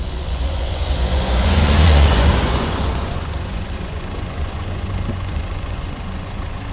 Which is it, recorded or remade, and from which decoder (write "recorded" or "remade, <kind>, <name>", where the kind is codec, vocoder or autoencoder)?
remade, vocoder, Vocos